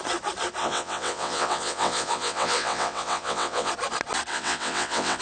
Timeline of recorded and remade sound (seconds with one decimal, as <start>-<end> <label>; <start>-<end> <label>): 0.0-0.6 recorded; 0.6-3.7 remade; 3.7-4.3 recorded; 4.3-5.2 remade